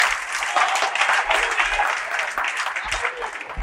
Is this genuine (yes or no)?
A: yes